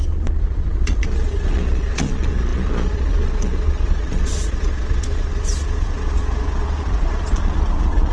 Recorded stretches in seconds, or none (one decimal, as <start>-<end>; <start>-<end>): none